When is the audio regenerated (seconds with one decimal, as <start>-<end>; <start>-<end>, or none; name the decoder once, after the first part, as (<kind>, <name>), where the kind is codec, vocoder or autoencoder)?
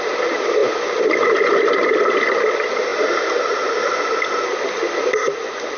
none